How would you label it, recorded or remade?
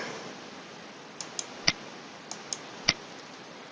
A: recorded